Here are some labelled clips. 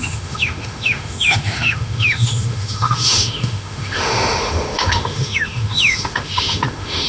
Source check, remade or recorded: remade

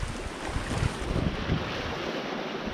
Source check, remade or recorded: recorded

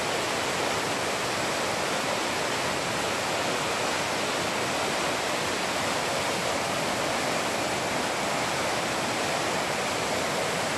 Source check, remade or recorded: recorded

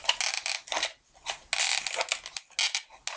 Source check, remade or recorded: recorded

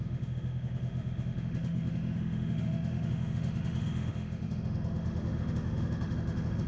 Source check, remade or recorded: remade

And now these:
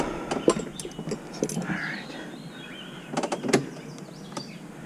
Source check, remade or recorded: recorded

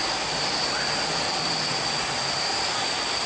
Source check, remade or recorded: recorded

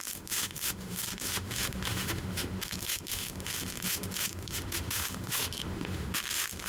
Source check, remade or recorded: remade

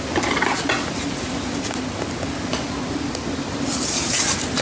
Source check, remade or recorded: recorded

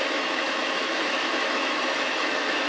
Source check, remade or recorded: remade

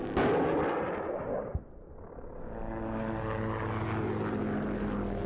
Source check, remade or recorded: recorded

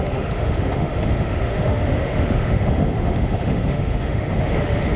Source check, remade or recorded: remade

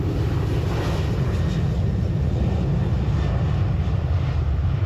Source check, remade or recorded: recorded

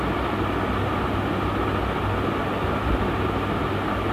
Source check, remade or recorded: recorded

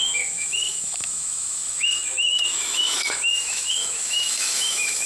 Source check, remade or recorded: remade